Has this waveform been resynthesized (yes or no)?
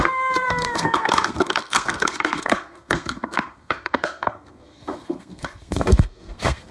yes